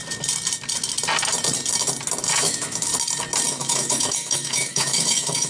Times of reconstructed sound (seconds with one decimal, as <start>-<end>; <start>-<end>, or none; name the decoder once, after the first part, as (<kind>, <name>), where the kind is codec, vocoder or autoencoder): 2.4-2.9 (autoencoder, DAC-VAE); 3.5-5.5